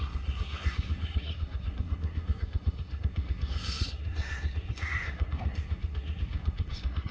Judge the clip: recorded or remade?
remade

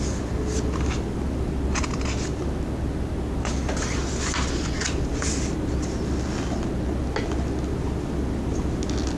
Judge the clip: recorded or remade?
recorded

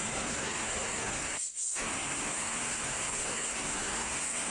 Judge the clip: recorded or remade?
remade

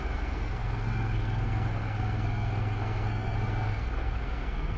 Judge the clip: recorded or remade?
remade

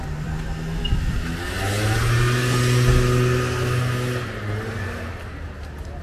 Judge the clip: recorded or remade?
recorded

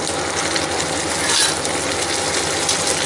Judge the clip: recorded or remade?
recorded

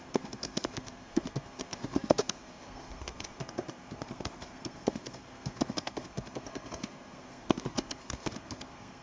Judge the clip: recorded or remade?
remade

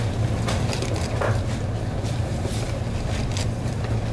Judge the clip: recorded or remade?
recorded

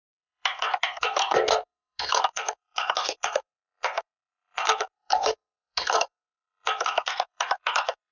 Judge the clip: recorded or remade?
remade